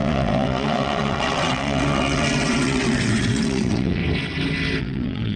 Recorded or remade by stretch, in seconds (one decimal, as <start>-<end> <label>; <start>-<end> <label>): 0.0-4.0 remade; 4.0-4.8 recorded; 4.8-5.4 remade